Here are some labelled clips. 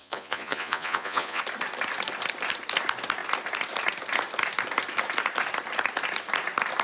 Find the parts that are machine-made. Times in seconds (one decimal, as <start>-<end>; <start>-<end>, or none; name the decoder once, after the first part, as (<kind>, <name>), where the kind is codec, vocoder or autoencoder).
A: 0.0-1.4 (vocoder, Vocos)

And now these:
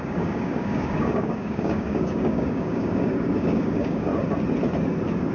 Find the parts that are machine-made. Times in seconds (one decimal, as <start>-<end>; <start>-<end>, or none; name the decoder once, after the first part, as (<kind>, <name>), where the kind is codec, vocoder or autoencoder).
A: 0.0-4.1 (codec, DAC)

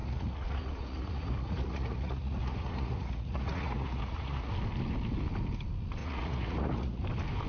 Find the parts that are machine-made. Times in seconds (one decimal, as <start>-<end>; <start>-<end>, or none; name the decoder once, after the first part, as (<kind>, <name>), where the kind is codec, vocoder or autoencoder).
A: 0.0-4.5 (vocoder, Vocos); 6.0-7.0